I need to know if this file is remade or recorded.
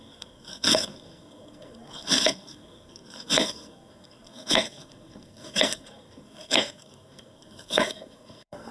remade